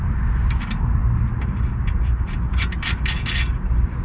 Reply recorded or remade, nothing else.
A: recorded